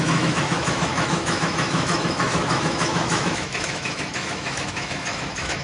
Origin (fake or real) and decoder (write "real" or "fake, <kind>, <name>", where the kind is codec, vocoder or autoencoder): fake, autoencoder, DAC-VAE